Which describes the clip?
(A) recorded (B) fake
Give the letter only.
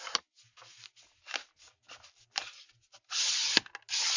A